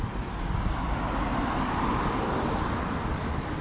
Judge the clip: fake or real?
real